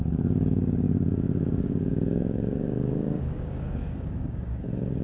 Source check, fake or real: fake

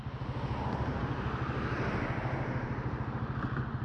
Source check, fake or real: real